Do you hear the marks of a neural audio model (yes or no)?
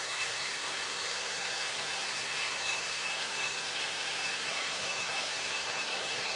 yes